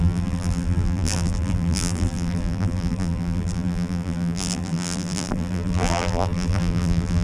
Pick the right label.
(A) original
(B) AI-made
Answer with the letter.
B